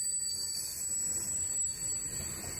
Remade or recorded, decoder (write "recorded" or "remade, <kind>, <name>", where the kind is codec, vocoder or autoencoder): recorded